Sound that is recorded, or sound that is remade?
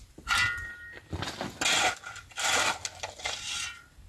recorded